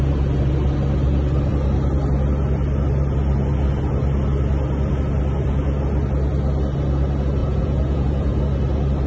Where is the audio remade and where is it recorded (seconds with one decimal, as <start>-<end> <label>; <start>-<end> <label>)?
0.0-7.4 recorded; 7.4-8.4 remade; 8.4-9.1 recorded